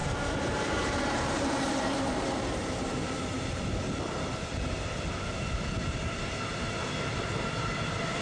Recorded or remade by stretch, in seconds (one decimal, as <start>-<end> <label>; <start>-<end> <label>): 0.0-3.7 remade; 3.7-8.2 recorded